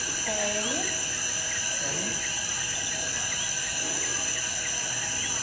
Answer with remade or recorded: recorded